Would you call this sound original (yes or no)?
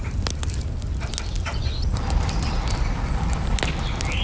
yes